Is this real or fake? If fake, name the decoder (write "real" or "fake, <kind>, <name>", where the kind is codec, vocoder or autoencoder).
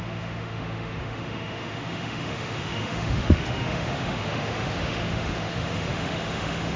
fake, autoencoder, DAC-VAE